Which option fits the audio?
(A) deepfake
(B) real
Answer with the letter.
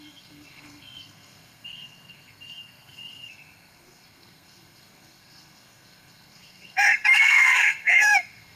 A